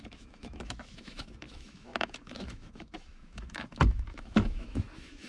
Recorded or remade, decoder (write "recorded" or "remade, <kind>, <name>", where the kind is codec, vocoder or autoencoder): remade, autoencoder, DAC-VAE